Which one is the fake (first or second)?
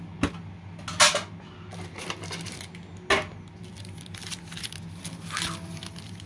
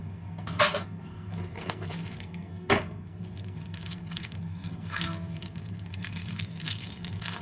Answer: second